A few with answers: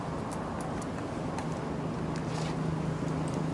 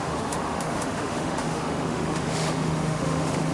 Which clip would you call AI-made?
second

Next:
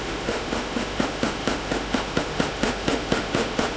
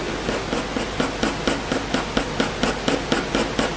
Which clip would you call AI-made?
first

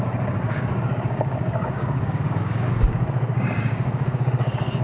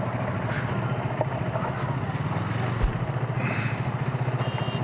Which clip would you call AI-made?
first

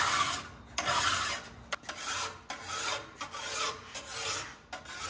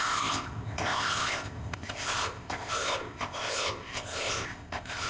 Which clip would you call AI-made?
second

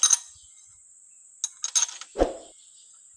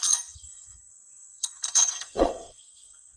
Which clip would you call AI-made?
second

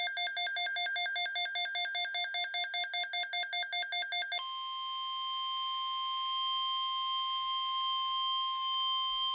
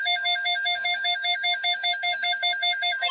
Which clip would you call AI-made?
second